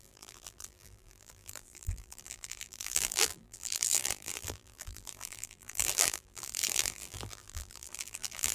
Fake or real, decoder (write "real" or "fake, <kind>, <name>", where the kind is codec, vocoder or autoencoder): fake, vocoder, BigVGAN v2